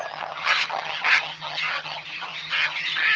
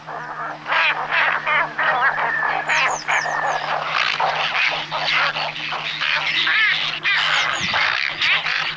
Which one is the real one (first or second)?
second